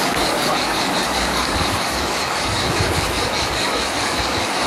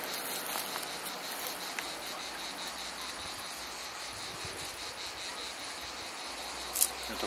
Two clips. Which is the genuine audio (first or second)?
second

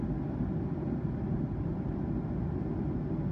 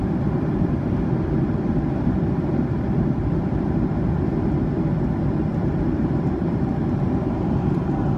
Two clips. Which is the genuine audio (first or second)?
first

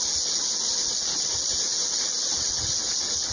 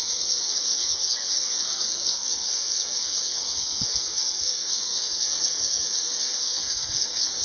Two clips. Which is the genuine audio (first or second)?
first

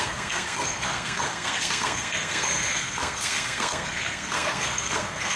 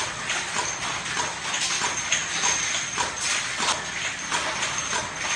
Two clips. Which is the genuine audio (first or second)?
second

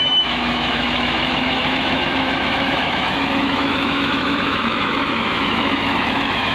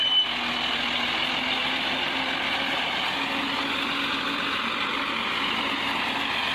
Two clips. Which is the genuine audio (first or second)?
second